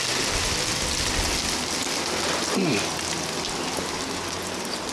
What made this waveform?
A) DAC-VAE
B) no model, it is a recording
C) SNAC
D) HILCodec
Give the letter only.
B